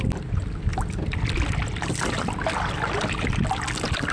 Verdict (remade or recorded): recorded